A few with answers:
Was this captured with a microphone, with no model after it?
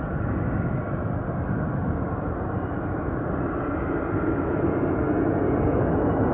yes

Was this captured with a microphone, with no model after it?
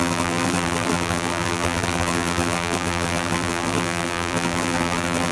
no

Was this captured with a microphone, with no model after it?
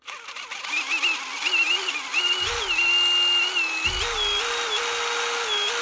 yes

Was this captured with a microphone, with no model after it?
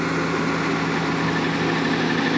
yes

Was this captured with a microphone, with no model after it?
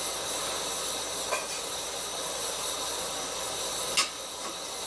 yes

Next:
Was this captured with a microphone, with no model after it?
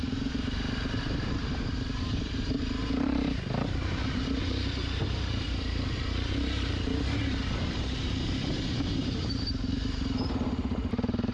no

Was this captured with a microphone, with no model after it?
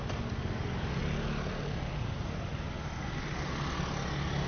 yes